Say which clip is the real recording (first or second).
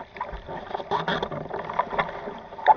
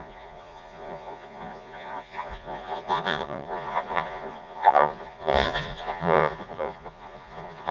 first